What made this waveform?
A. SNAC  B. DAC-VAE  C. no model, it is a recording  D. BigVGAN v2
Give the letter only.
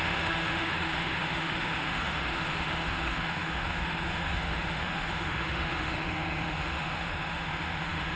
B